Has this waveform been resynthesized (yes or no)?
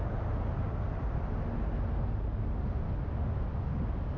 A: no